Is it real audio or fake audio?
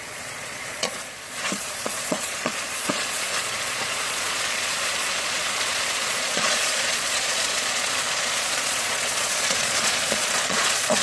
fake